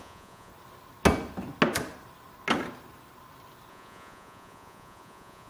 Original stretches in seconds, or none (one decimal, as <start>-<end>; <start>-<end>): 0.5-3.7